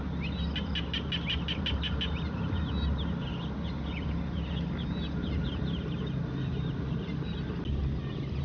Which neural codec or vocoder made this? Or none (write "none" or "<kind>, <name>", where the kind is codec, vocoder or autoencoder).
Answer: none